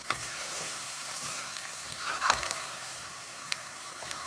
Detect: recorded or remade remade